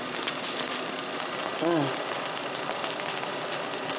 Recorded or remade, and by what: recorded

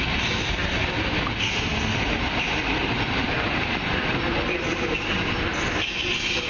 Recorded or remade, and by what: recorded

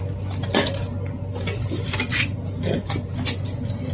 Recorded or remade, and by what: recorded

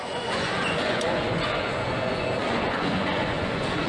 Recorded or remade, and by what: remade, vocoder, Vocos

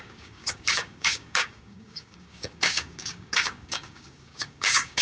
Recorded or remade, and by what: remade, codec, DAC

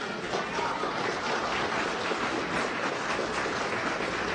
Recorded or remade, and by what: recorded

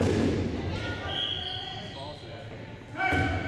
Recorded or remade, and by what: recorded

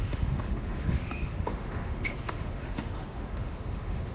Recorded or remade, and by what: remade, autoencoder, DAC-VAE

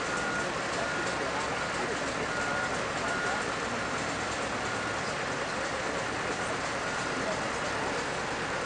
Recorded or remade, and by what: recorded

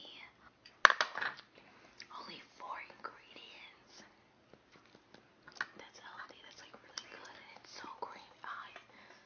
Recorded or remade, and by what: recorded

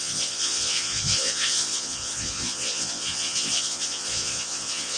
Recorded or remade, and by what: remade, vocoder, Vocos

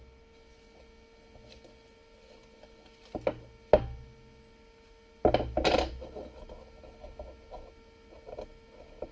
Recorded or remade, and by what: recorded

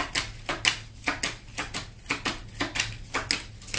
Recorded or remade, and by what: recorded